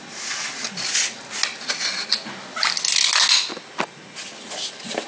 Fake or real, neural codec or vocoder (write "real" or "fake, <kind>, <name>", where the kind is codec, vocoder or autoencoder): real